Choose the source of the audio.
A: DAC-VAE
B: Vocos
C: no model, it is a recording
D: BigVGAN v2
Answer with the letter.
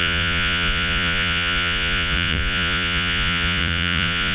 B